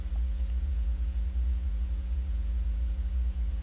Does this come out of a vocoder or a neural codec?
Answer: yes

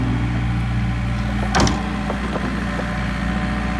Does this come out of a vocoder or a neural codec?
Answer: no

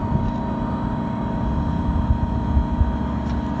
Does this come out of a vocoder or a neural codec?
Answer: no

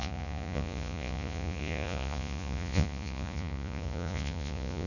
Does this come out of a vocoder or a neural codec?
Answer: yes